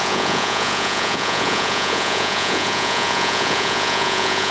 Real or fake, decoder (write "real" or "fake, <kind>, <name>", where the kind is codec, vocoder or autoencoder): fake, vocoder, Vocos